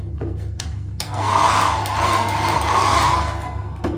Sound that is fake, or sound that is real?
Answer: fake